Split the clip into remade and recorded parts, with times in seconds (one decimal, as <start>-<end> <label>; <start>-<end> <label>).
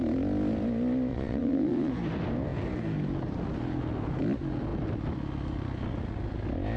0.0-1.1 recorded; 1.1-1.9 remade; 1.9-6.8 recorded